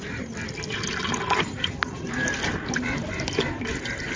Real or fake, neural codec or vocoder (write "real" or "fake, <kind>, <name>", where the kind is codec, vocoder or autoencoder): real